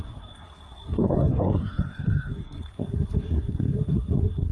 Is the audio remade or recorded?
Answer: remade